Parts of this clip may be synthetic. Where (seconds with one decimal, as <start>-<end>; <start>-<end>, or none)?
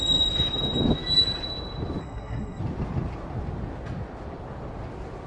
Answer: 2.0-2.6